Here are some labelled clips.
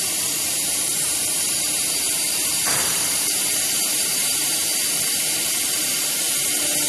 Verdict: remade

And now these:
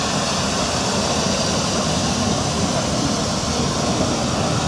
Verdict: recorded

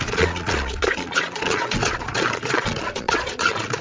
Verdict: remade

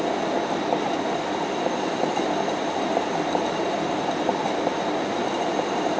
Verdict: recorded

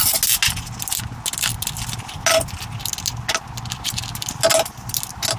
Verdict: recorded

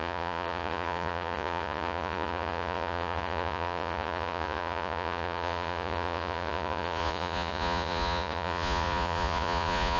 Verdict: remade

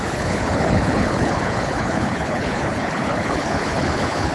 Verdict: remade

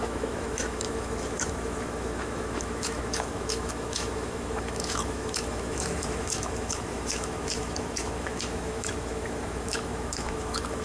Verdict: remade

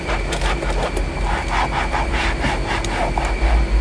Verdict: recorded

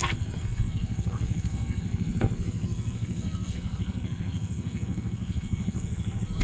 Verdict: remade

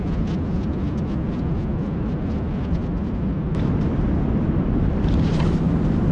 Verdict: recorded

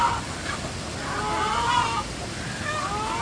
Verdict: recorded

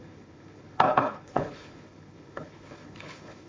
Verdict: remade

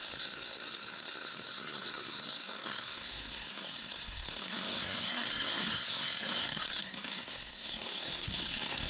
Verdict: remade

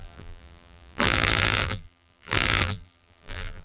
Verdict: remade